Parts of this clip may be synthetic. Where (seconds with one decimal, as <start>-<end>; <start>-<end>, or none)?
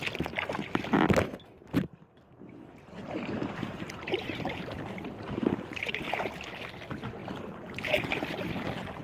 2.3-6.1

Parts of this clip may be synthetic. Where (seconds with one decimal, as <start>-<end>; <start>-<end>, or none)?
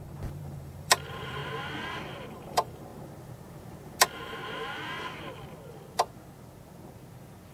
0.0-1.4; 2.3-2.9; 4.0-4.4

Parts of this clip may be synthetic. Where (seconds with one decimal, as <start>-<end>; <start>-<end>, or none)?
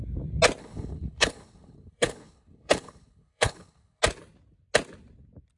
0.6-4.0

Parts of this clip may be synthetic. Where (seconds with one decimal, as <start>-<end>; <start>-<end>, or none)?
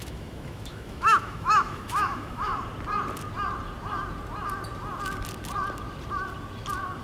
0.0-2.5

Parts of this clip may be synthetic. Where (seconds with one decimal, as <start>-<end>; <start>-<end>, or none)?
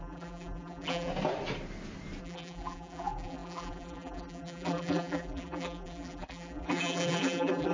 0.0-1.1; 2.2-7.7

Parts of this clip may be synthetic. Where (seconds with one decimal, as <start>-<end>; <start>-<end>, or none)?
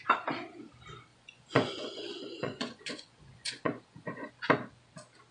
1.1-4.3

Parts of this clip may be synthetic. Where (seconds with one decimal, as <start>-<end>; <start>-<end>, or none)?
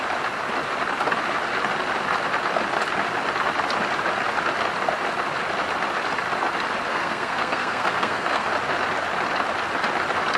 6.9-8.5